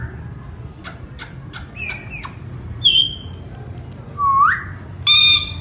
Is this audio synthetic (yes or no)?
no